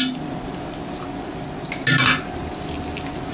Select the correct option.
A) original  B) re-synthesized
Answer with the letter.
A